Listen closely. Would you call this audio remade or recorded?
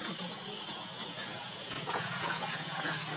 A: remade